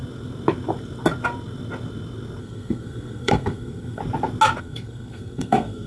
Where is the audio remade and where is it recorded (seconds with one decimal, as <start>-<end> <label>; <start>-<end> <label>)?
0.0-2.4 recorded; 2.4-4.0 remade; 4.0-4.6 recorded; 4.6-5.9 remade